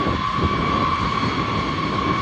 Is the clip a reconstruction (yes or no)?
no